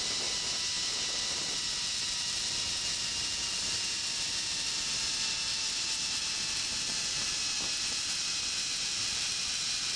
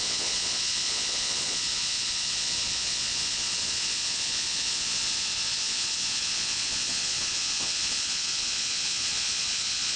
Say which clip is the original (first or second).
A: first